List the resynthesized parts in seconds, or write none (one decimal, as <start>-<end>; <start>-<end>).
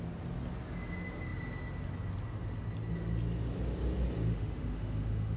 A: 4.3-5.4